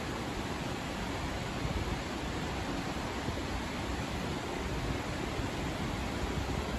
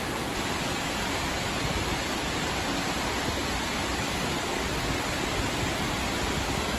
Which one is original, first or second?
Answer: second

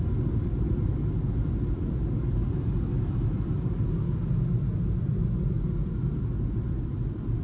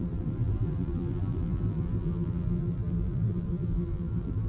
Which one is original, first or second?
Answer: first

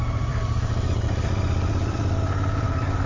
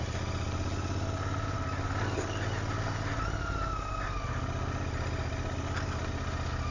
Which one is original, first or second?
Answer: second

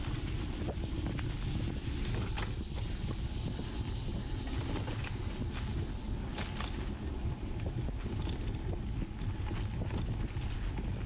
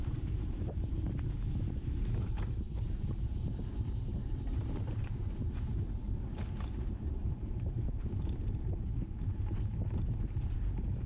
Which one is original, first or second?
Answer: first